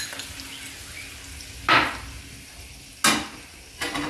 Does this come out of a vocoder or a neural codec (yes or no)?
no